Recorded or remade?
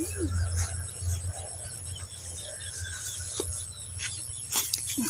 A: recorded